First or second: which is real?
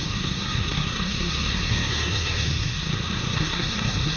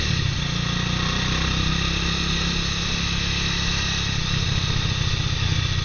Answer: second